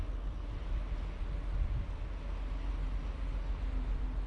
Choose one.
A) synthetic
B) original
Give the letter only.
B